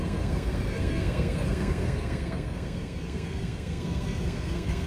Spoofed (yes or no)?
yes